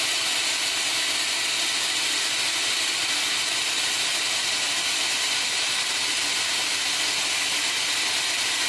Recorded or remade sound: recorded